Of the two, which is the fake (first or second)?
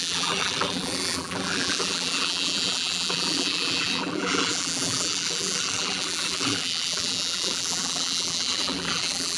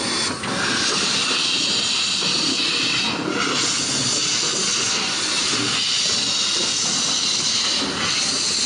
first